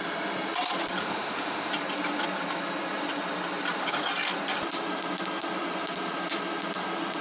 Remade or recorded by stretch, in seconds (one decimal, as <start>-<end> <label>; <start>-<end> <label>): 0.0-1.0 recorded; 1.0-1.7 remade; 1.7-7.2 recorded